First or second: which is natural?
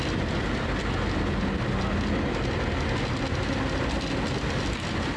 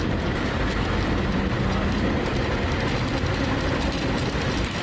first